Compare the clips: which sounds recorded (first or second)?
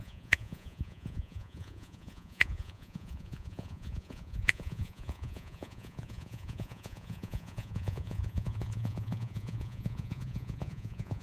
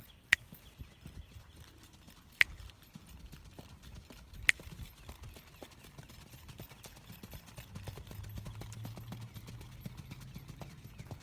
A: second